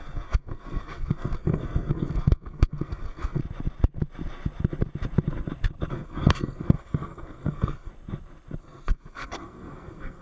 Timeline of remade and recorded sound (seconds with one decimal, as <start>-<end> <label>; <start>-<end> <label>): 0.0-3.4 remade; 3.4-5.9 recorded; 5.9-7.9 remade; 7.9-8.6 recorded; 8.6-10.2 remade